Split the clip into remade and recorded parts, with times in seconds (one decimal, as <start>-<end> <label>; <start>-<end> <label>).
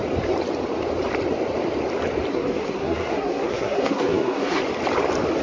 0.0-2.3 recorded; 2.3-4.6 remade; 4.6-5.4 recorded